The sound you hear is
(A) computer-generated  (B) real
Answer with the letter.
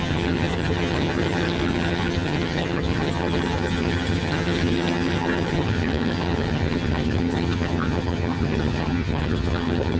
A